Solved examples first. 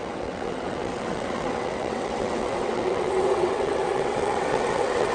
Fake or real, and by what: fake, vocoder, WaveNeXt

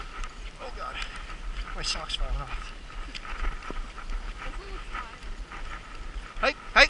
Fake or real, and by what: real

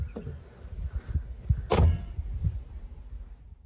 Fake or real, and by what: real